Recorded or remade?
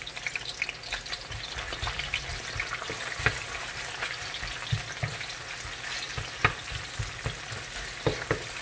recorded